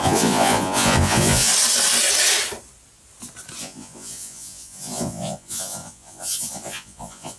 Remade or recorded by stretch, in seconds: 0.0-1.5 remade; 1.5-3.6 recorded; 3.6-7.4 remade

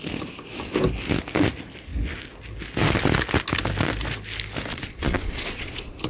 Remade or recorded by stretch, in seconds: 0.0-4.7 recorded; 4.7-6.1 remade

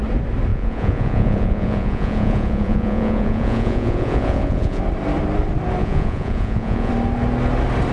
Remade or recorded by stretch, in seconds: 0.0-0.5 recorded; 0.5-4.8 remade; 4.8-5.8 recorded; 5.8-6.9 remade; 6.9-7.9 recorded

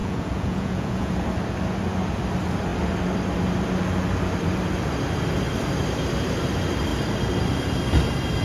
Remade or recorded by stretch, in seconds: 0.0-1.1 remade; 1.1-8.4 recorded

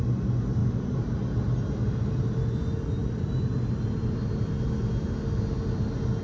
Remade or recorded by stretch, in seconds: 0.0-6.2 recorded

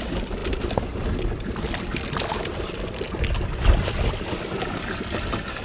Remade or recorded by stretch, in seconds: 0.0-5.6 recorded

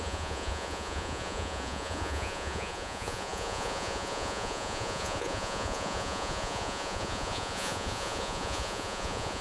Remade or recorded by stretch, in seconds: 0.0-9.4 remade